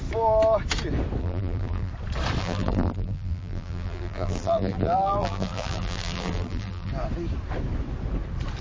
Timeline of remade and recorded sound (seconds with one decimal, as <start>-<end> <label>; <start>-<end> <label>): 0.0-1.2 recorded; 1.2-1.9 remade; 1.9-2.4 recorded; 2.4-6.9 remade; 6.9-8.6 recorded